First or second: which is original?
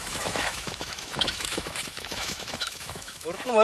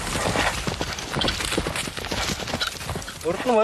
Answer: second